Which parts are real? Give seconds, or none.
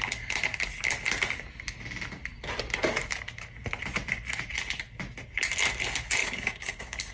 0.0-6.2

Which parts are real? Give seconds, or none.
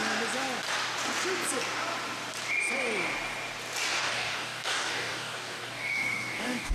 0.0-4.0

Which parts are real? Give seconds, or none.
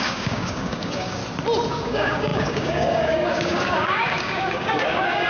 1.2-1.7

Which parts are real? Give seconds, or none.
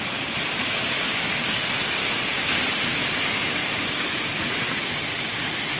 0.0-1.0; 1.6-2.0; 2.5-3.6; 4.4-5.8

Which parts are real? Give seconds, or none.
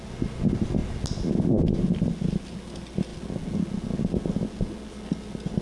0.0-5.6